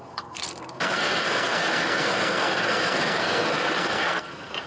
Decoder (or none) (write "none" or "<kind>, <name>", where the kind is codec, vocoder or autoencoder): codec, SNAC